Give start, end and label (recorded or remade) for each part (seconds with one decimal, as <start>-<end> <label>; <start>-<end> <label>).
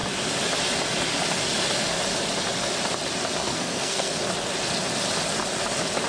0.0-3.4 recorded; 3.4-4.2 remade; 4.2-6.1 recorded